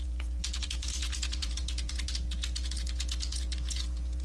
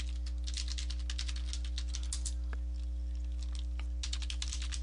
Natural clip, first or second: second